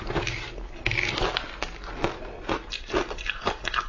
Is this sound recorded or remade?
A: recorded